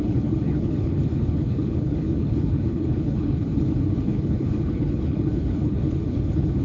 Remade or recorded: remade